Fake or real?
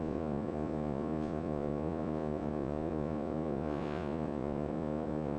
fake